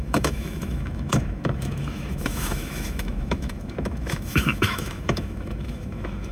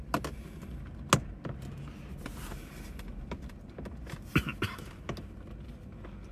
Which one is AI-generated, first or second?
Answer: first